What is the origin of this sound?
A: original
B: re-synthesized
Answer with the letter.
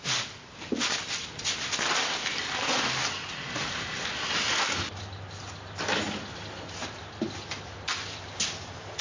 A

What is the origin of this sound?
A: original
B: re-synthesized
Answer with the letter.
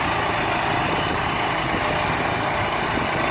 A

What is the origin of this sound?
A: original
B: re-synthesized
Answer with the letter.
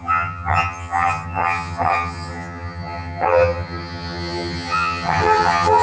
B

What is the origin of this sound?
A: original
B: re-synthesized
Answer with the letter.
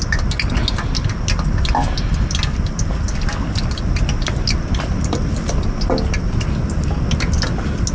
A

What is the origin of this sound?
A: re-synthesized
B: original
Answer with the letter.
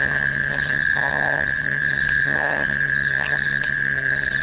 A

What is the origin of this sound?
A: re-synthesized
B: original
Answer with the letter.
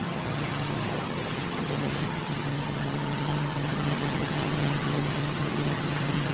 A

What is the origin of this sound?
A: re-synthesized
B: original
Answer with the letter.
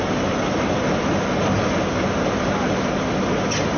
B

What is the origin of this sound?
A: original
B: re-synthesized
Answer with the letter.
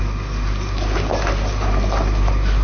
A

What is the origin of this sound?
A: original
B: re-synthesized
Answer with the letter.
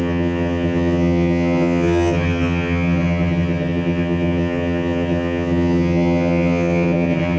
B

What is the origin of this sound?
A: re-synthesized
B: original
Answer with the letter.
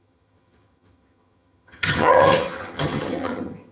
A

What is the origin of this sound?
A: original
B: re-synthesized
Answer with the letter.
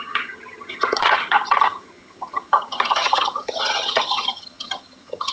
B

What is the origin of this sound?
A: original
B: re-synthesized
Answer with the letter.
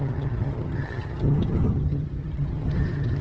B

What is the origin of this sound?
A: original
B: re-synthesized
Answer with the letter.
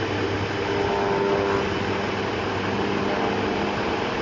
A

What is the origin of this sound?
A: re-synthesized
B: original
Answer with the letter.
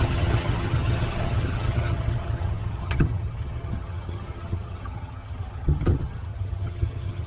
A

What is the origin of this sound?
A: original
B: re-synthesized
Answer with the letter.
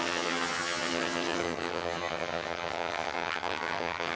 B